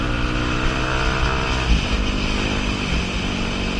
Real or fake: real